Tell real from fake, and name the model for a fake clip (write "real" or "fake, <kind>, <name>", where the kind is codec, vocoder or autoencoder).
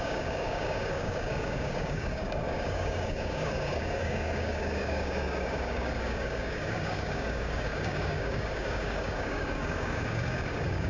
fake, codec, DAC